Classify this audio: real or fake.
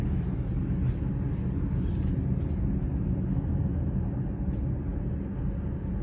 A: real